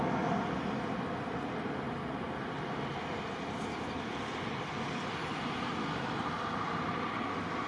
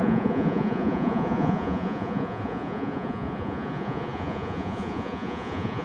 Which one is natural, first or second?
first